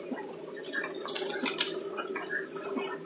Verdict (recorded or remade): recorded